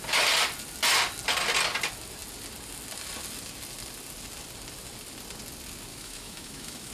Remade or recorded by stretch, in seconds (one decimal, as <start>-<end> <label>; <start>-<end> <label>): 0.0-5.9 recorded; 5.9-6.9 remade